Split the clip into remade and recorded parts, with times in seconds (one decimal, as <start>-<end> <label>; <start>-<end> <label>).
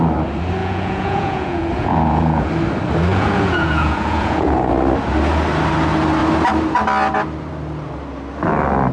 0.0-0.6 recorded; 0.6-2.5 remade; 2.5-3.1 recorded; 3.1-4.7 remade; 4.7-8.9 recorded